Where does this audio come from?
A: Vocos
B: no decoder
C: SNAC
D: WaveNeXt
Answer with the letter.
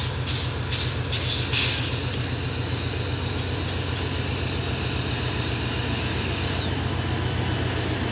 B